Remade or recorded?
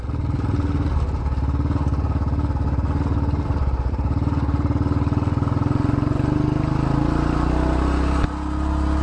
recorded